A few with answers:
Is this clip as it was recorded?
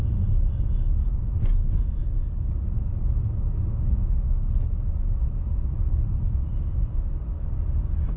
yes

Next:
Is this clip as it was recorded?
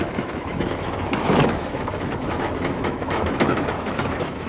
no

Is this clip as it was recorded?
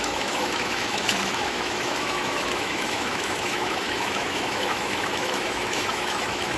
no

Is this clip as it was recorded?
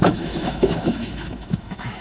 no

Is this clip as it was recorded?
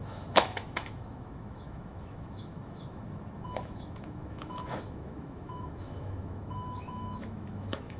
no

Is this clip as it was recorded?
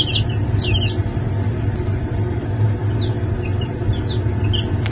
yes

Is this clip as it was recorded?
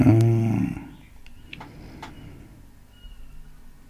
yes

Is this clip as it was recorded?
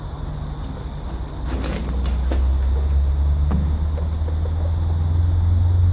yes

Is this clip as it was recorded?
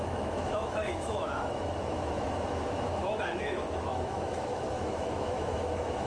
no